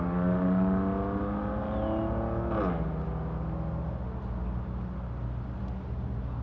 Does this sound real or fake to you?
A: real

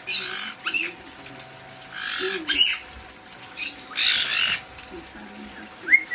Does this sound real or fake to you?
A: real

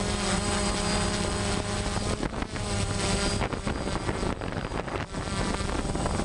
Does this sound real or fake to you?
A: real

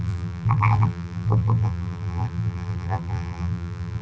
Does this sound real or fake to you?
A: fake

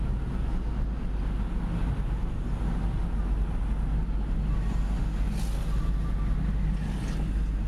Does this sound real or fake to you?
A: real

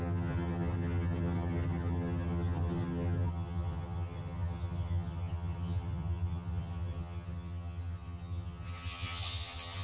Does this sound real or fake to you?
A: fake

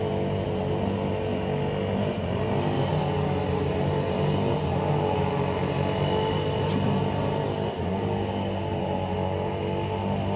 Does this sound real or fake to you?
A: real